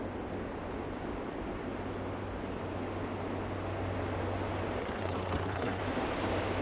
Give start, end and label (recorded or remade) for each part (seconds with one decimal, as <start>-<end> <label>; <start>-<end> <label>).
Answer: 0.0-4.8 recorded; 4.8-5.8 remade; 5.8-6.6 recorded